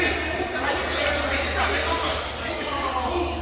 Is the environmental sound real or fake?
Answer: real